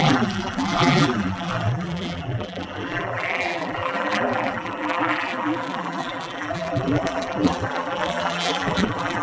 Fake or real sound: fake